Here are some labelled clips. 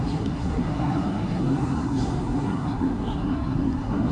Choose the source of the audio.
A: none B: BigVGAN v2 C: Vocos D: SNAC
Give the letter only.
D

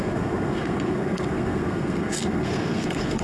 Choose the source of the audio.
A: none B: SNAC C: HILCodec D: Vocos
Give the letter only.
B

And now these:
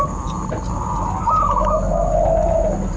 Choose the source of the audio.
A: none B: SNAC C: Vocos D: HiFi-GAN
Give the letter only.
A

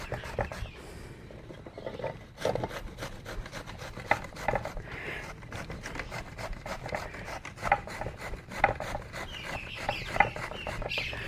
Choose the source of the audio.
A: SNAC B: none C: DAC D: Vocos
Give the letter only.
B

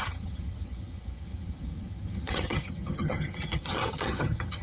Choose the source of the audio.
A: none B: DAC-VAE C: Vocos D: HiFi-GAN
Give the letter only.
D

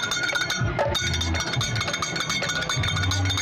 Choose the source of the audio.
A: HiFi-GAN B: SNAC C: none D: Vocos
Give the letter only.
C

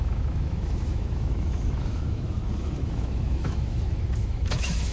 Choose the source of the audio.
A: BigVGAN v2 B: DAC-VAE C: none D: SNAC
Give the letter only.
B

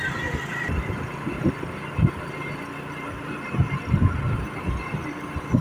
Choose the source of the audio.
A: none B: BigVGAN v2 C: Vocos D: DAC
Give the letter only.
A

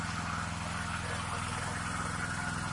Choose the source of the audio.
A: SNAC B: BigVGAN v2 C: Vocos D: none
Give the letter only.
D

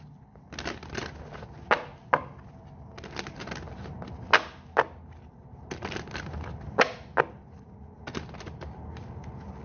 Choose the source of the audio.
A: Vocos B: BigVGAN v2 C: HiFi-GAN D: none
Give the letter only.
D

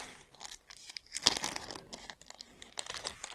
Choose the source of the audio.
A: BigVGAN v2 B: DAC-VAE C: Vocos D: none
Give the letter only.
D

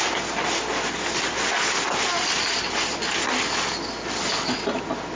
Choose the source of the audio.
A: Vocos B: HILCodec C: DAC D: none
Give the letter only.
D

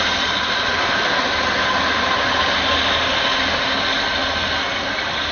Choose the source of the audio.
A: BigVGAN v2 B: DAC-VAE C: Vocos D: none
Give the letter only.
D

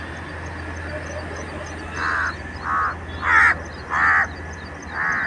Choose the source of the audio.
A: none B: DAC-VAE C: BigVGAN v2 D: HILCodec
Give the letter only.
A